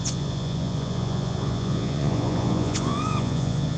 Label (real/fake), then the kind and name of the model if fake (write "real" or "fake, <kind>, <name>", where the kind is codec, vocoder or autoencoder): fake, vocoder, Vocos